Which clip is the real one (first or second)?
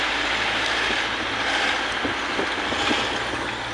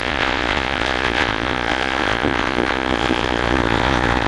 first